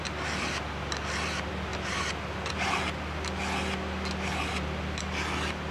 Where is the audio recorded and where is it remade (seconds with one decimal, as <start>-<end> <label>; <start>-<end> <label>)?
0.0-5.7 recorded